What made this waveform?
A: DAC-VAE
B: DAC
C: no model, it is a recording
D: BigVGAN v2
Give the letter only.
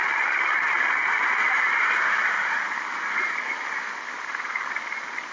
C